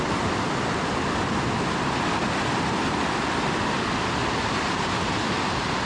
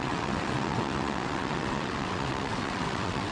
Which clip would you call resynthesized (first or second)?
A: second